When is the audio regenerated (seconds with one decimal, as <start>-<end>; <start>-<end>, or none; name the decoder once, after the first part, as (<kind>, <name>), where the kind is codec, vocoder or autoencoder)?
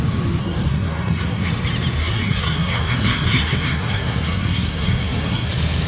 0.4-1.5 (codec, SNAC); 2.0-5.5